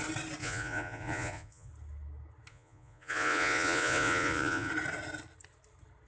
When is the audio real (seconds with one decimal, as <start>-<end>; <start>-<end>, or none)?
0.0-0.4; 1.7-2.5; 4.7-6.1